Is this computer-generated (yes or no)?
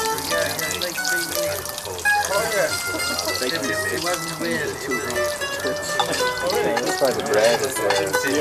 no